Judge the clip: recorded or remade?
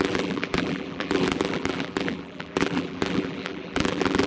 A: remade